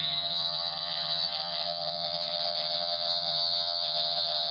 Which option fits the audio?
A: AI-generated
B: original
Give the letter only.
A